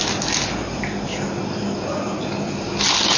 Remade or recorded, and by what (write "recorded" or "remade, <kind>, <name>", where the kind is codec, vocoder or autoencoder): recorded